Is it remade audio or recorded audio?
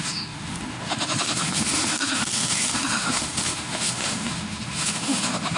remade